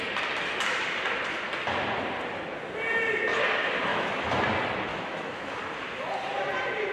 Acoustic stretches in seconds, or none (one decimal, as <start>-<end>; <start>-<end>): 0.0-3.9; 4.4-4.9; 5.6-6.9